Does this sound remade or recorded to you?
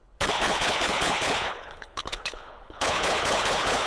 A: remade